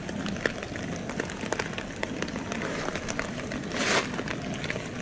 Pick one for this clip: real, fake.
real